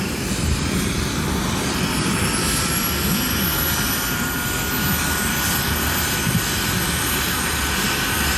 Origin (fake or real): real